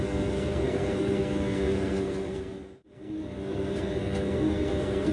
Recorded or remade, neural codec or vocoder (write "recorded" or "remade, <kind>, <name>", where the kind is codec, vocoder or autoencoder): remade, codec, SNAC